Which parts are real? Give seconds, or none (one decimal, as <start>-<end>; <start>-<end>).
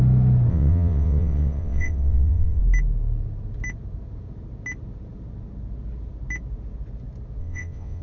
0.0-0.5; 2.6-7.4